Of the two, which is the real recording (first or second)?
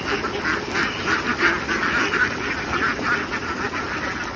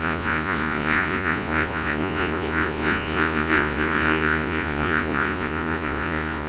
first